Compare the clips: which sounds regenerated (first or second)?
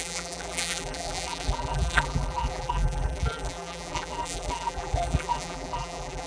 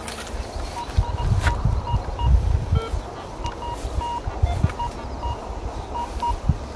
first